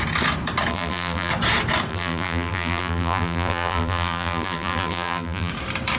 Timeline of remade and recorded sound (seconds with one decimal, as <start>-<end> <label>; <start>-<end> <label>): 0.0-0.7 recorded; 0.7-1.3 remade; 1.3-1.9 recorded; 1.9-5.5 remade; 5.5-6.0 recorded